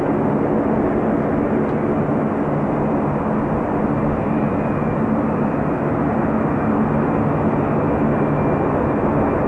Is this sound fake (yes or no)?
no